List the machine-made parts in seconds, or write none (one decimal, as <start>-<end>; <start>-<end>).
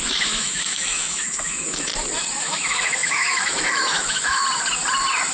0.0-1.9; 2.4-4.4